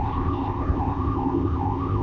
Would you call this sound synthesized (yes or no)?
yes